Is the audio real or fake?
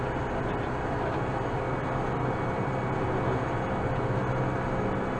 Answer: real